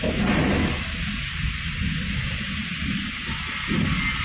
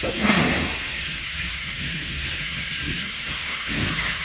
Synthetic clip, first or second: second